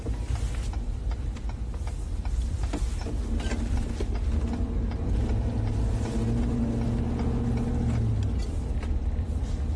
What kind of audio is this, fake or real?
real